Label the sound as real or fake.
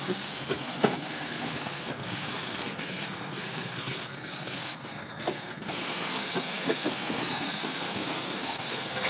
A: fake